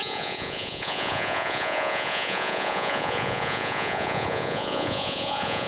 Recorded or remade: remade